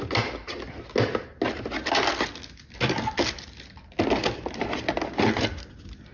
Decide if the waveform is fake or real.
real